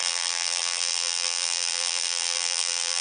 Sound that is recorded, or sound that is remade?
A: remade